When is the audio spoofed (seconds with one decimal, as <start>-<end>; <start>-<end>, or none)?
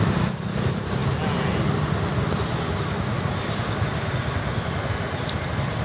none